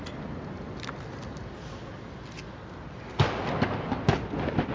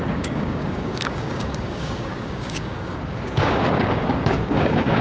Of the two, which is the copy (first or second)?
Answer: second